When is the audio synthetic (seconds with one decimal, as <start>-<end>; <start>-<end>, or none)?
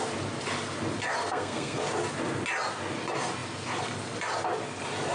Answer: 1.2-1.8